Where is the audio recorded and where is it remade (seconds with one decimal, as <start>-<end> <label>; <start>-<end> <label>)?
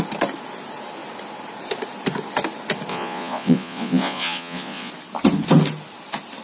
0.0-2.9 recorded; 2.9-4.9 remade; 4.9-6.4 recorded